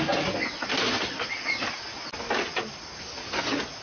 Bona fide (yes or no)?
yes